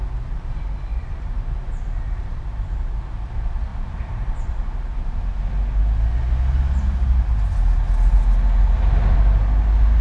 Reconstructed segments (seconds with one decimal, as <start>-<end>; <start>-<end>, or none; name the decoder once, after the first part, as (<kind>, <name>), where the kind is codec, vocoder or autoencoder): 0.9-3.0 (vocoder, BigVGAN v2); 3.7-4.5